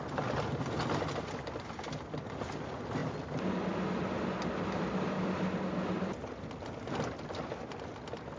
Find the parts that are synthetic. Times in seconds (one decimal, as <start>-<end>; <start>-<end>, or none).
none